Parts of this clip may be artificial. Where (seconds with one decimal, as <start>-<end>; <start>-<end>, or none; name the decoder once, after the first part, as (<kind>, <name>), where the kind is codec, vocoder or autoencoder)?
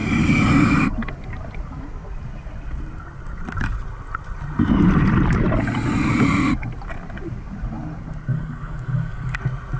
8.3-9.4 (codec, DAC)